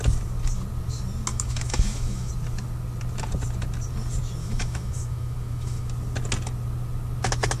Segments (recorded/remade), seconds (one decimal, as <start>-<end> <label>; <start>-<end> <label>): 0.0-1.3 recorded; 1.3-2.3 remade; 2.3-4.4 recorded; 4.4-5.9 remade; 5.9-7.6 recorded